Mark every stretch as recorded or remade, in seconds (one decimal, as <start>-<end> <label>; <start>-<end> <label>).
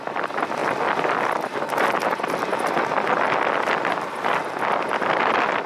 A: 0.0-5.7 recorded